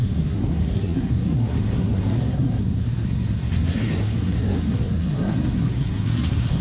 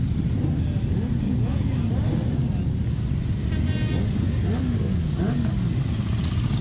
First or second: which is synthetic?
first